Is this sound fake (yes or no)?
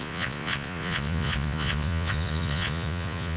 yes